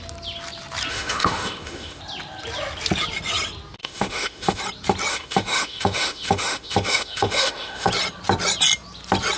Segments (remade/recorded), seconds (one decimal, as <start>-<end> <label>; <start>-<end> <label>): 0.0-0.9 recorded; 0.9-2.0 remade; 2.0-3.8 recorded; 3.8-4.6 remade; 4.6-5.1 recorded; 5.1-7.9 remade; 7.9-9.4 recorded